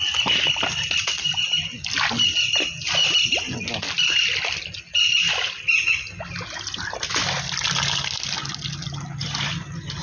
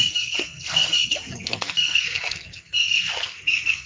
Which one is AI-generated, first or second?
second